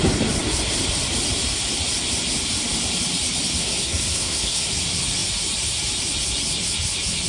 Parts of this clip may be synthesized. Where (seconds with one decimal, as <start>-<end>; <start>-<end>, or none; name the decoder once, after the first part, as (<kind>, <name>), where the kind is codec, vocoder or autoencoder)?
3.6-4.7 (codec, SNAC)